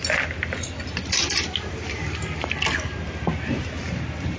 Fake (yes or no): no